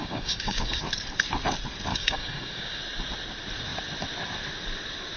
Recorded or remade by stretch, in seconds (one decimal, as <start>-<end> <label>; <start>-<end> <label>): 0.0-0.8 remade; 0.8-1.9 recorded; 1.9-2.8 remade; 2.8-5.2 recorded